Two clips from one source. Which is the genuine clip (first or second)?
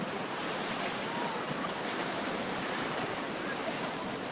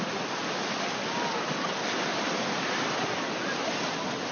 second